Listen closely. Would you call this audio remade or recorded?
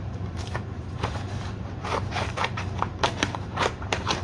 remade